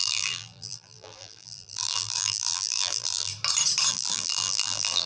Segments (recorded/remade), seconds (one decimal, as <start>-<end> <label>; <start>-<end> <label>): 0.0-3.3 remade; 3.3-3.9 recorded; 3.9-5.1 remade